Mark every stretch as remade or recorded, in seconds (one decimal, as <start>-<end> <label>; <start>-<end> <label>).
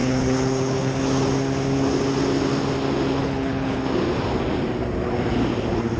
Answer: 0.0-1.0 remade; 1.0-3.2 recorded; 3.2-3.8 remade; 3.8-6.0 recorded